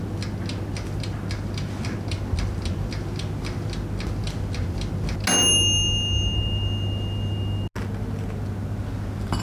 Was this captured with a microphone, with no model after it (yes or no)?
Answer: yes